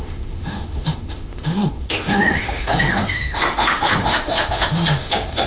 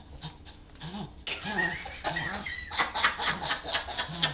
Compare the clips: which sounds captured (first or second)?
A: second